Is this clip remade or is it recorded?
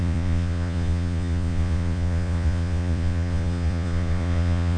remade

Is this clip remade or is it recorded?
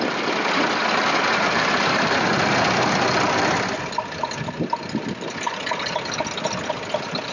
recorded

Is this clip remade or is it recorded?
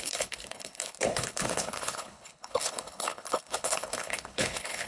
remade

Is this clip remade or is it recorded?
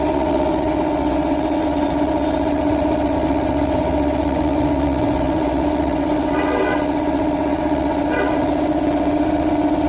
remade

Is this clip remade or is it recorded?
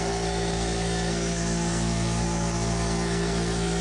remade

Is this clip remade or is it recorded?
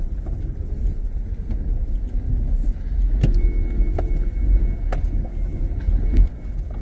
recorded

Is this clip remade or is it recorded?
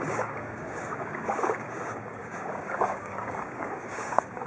remade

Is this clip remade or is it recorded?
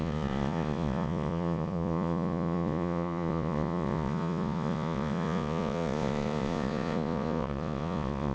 remade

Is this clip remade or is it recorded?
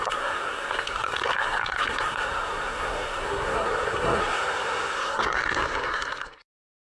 remade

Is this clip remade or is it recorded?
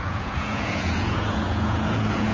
remade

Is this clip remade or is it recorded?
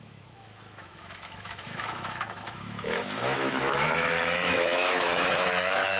remade